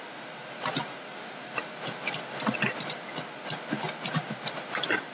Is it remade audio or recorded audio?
recorded